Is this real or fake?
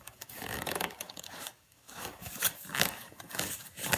fake